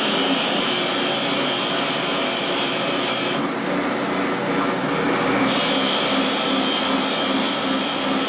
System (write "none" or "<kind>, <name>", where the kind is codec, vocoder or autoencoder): none